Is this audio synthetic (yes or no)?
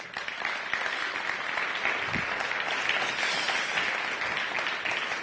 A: no